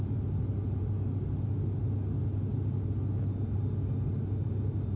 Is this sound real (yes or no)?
yes